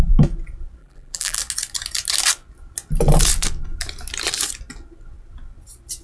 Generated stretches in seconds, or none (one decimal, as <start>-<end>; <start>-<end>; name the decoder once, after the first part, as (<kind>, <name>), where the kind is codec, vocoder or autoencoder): 0.8-1.4 (vocoder, BigVGAN v2)